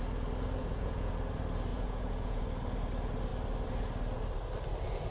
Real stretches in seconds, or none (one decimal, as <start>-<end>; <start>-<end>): 0.0-0.6; 1.1-1.7; 2.4-5.1